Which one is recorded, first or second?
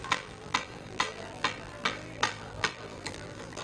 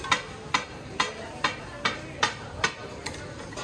second